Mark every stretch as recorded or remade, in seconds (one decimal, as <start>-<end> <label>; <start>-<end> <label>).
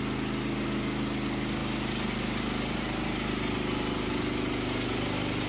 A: 0.0-5.5 recorded